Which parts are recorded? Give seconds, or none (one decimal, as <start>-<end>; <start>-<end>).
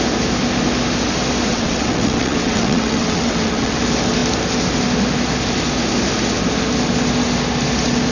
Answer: 0.0-1.5; 3.8-8.1